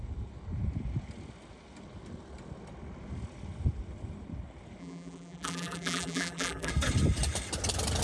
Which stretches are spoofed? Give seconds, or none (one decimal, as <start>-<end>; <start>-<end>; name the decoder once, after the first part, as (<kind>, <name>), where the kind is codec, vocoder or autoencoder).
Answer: 4.8-6.7 (vocoder, BigVGAN v2)